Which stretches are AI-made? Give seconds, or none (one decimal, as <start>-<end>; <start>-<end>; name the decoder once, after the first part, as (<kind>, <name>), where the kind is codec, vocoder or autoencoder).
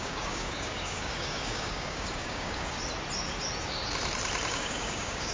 0.0-2.8 (codec, DAC); 4.5-5.3